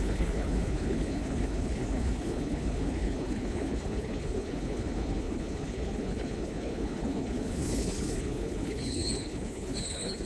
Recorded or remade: remade